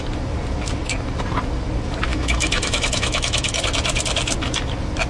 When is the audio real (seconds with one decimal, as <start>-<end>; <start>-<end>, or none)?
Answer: 0.0-2.1; 3.6-5.1